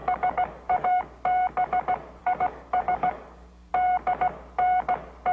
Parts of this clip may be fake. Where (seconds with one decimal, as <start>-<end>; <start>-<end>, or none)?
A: 0.0-1.0; 2.2-3.7